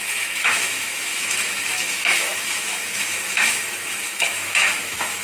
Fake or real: fake